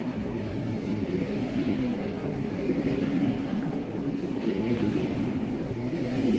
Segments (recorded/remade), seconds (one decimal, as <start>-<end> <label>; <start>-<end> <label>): 0.0-5.0 remade; 5.0-5.5 recorded; 5.5-6.4 remade